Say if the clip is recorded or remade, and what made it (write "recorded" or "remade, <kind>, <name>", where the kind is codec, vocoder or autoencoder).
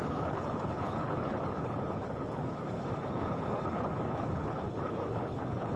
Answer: remade, codec, HILCodec